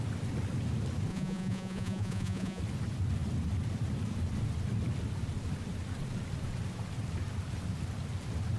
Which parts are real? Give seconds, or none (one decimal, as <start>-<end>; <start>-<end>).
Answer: 0.0-1.1; 2.6-8.6